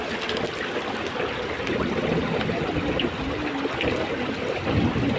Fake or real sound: real